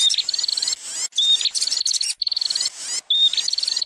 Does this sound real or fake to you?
real